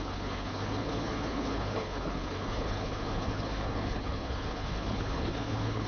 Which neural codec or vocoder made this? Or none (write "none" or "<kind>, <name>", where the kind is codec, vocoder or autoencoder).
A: codec, HILCodec